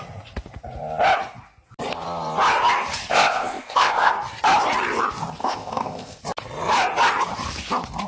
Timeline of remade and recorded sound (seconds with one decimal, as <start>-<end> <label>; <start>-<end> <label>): 0.0-3.1 recorded; 3.1-4.1 remade; 4.1-5.4 recorded; 5.4-6.2 remade; 6.2-8.1 recorded